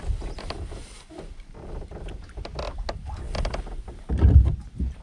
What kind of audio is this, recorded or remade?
recorded